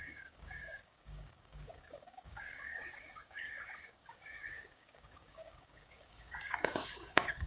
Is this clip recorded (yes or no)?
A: no